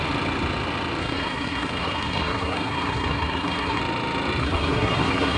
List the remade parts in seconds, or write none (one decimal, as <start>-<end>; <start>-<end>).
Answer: 1.0-3.8; 4.4-5.4